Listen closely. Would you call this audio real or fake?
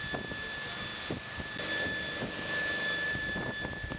real